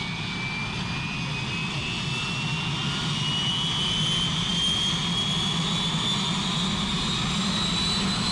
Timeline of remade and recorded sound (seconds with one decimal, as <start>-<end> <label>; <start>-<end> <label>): 0.0-8.3 recorded

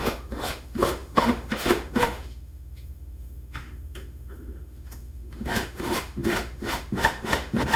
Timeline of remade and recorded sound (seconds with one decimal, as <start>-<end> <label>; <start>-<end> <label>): 0.0-7.8 remade

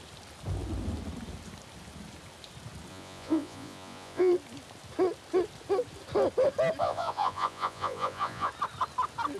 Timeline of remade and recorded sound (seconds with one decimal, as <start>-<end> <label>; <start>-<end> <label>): 0.0-2.9 recorded; 2.9-4.3 remade; 4.3-6.8 recorded; 6.8-8.5 remade; 8.5-9.4 recorded

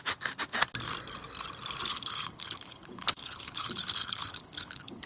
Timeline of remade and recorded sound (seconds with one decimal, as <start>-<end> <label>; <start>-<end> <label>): 0.0-1.9 recorded; 1.9-5.1 remade

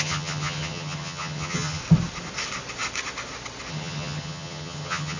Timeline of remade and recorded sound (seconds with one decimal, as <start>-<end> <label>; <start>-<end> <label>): 0.0-1.8 remade; 1.8-3.7 recorded; 3.7-5.2 remade

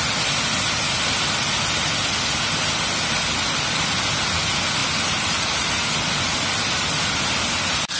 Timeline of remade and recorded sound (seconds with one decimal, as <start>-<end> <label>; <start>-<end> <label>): 0.0-4.8 recorded; 4.8-7.2 remade; 7.2-8.0 recorded

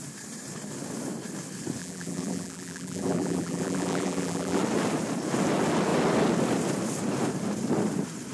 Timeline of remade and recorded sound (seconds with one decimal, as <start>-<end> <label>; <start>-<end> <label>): 0.0-1.8 recorded; 1.8-4.6 remade; 4.6-8.3 recorded